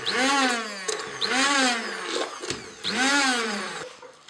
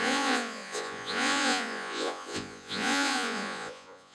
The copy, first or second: second